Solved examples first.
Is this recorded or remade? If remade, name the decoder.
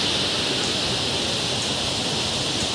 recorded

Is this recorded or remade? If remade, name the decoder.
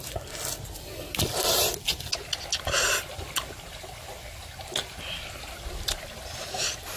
recorded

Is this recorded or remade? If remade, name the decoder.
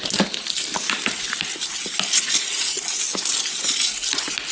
recorded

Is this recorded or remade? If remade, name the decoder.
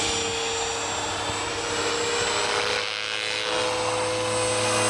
recorded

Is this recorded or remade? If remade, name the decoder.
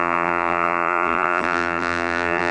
remade, vocoder, BigVGAN v2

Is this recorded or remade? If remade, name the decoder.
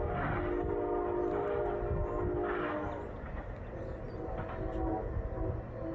recorded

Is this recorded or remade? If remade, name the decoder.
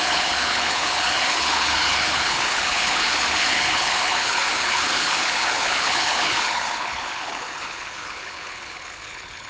remade, codec, HILCodec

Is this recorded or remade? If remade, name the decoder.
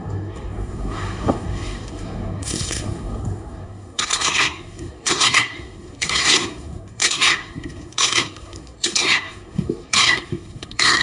remade, codec, SNAC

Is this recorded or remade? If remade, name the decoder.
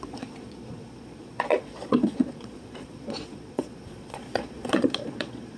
remade, vocoder, Vocos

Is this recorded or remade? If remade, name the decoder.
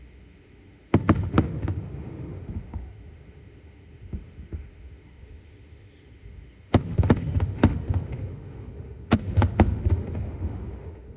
remade, autoencoder, DAC-VAE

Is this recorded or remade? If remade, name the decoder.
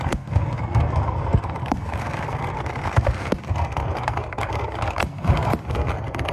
remade, codec, SNAC